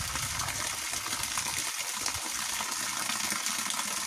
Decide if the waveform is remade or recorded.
recorded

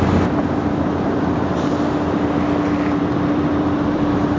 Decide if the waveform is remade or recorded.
remade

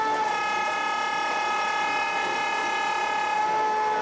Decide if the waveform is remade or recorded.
recorded